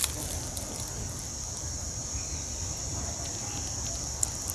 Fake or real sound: fake